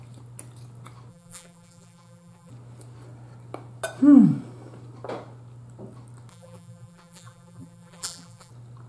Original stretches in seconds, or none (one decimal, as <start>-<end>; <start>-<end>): 0.0-1.1; 2.5-6.3; 8.5-8.9